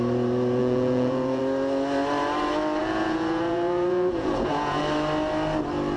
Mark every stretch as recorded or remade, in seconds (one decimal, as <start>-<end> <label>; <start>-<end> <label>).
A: 0.0-0.6 recorded; 0.6-1.4 remade; 1.4-2.8 recorded; 2.8-4.8 remade; 4.8-6.0 recorded